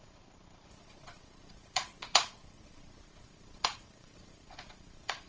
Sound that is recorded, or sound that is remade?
remade